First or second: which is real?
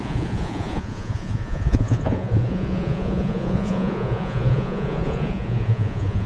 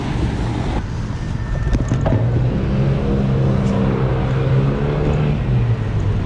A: second